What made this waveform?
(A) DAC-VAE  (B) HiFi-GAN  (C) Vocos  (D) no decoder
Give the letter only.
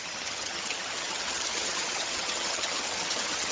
B